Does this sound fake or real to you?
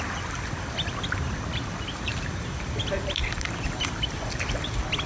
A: fake